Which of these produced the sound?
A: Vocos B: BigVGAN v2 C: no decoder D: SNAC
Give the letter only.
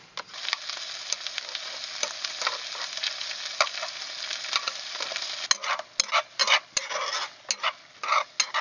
C